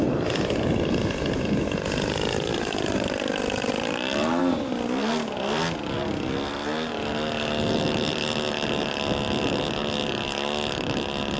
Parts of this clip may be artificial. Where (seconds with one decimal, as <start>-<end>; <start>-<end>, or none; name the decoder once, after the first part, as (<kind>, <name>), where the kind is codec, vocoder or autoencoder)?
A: none